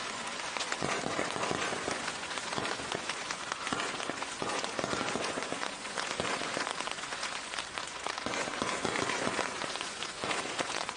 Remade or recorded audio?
remade